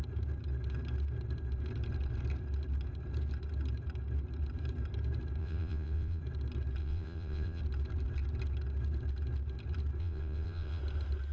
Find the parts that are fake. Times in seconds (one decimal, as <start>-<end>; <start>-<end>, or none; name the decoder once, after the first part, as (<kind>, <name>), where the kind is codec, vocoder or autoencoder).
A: 5.4-6.2 (vocoder, WaveNeXt); 6.8-7.6; 10.0-10.8